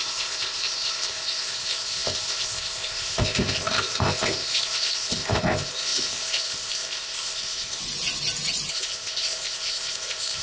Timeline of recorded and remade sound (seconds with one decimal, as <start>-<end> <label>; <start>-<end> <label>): 0.0-7.8 remade; 7.8-8.7 recorded; 8.7-10.4 remade